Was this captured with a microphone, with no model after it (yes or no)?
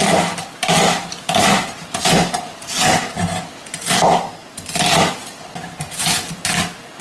yes